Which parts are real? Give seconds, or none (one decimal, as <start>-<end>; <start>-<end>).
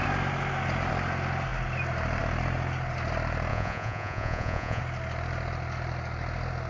0.0-3.5; 4.8-6.7